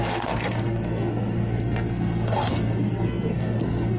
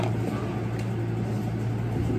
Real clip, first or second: second